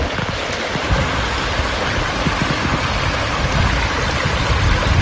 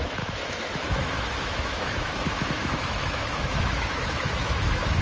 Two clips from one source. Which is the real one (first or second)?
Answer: first